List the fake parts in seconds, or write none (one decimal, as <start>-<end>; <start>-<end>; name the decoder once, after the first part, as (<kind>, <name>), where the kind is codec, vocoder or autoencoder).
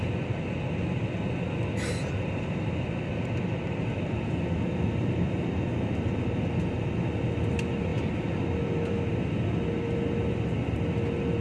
none